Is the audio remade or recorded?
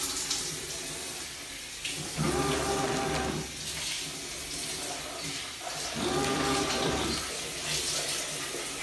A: recorded